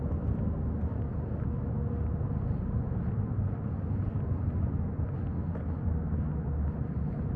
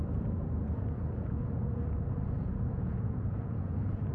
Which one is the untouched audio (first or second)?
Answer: first